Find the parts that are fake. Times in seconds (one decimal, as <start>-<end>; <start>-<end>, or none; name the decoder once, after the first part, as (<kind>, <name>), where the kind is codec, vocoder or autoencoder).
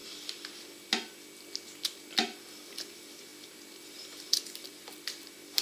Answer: 2.7-5.6 (vocoder, BigVGAN v2)